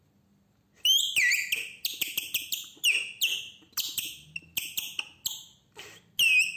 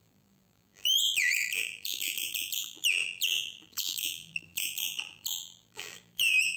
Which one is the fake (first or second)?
second